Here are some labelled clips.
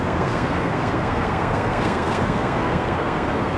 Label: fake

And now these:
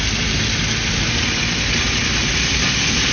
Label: real